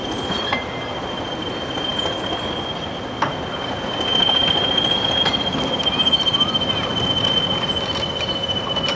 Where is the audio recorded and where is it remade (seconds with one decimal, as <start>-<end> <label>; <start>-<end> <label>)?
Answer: 0.0-9.0 recorded